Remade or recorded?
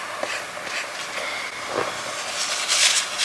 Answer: recorded